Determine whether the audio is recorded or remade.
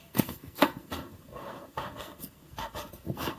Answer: remade